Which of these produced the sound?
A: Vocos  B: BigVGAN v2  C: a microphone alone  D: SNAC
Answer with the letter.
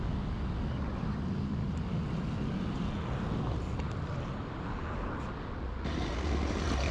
C